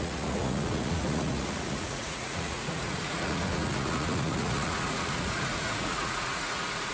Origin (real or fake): fake